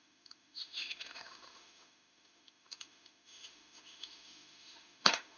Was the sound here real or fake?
fake